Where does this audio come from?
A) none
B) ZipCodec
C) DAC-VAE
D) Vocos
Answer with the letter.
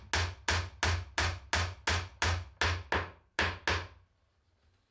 A